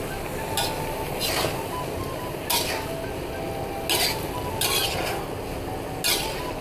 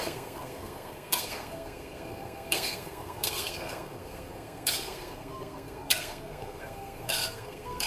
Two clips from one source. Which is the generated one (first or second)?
second